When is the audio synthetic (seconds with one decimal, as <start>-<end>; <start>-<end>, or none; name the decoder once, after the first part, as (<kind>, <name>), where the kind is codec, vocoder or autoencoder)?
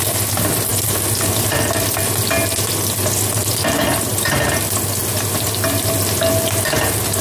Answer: none